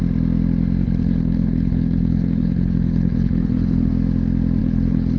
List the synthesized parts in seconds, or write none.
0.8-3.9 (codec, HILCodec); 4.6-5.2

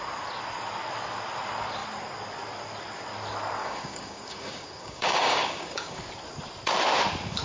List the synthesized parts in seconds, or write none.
3.6-6.1 (codec, DAC)

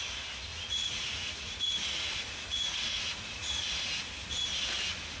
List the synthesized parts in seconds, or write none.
0.5-3.6 (vocoder, Vocos)

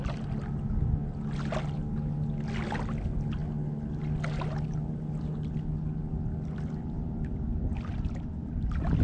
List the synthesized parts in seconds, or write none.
none

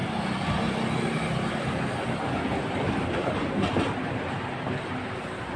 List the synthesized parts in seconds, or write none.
none

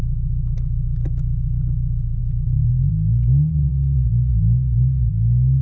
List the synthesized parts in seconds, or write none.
0.0-5.6 (autoencoder, DAC-VAE)